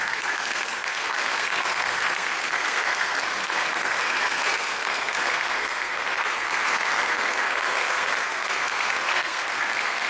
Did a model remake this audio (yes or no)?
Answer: yes